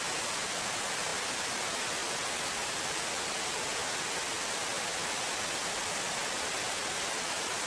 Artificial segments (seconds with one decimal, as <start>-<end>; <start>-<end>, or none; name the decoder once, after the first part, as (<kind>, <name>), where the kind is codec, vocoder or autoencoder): 2.0-3.1 (vocoder, BigVGAN v2)